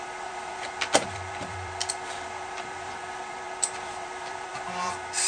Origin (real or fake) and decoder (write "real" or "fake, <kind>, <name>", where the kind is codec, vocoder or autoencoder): fake, vocoder, BigVGAN v2